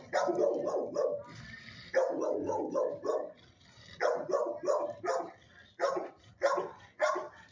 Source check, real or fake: real